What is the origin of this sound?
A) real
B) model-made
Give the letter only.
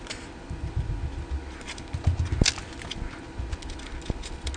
A